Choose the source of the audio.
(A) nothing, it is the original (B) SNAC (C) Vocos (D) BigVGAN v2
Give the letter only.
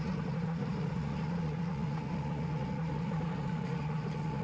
C